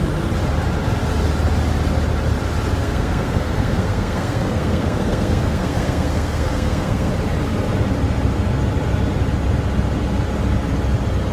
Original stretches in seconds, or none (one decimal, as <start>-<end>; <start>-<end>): 0.0-2.8; 7.1-11.3